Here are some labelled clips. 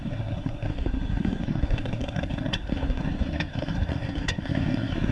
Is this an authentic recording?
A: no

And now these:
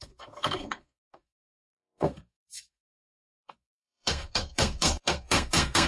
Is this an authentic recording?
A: no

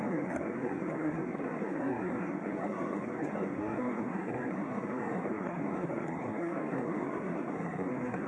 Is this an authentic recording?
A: no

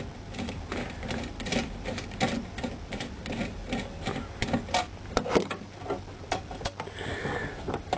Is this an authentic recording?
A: yes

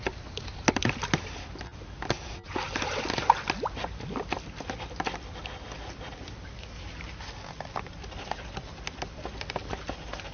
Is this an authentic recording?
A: yes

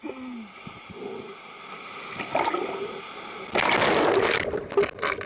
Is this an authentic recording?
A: yes